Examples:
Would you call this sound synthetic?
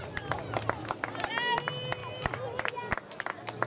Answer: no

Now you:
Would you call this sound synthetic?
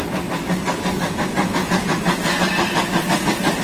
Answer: no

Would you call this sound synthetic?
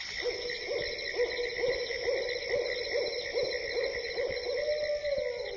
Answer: no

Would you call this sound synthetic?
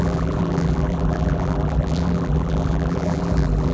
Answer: yes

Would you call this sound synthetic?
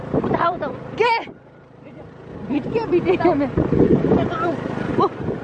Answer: yes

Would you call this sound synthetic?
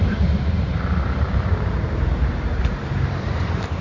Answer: yes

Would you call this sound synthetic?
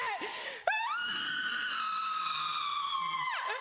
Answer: no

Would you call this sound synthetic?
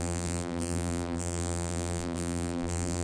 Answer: yes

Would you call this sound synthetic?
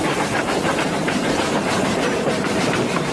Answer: yes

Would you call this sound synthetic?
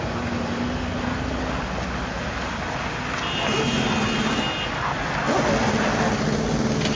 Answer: no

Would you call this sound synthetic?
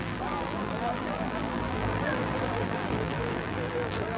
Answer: yes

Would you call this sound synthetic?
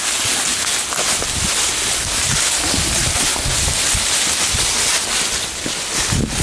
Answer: no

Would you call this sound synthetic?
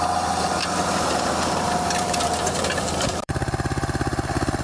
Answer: yes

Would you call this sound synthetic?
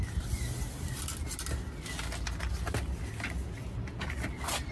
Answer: no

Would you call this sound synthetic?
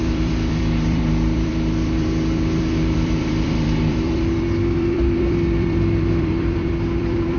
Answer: yes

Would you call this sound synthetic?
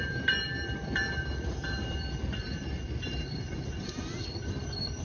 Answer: yes